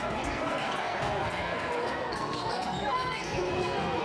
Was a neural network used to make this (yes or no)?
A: yes